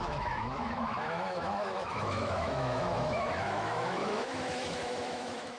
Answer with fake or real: fake